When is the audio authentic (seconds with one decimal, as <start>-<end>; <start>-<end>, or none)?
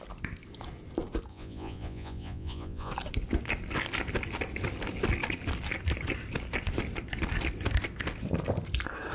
0.0-1.3; 2.9-9.1